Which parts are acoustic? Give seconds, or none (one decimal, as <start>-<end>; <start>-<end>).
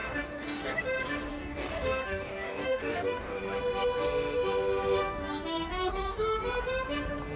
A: 0.8-1.3; 3.4-5.0; 6.4-7.4